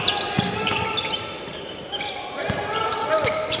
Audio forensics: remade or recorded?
recorded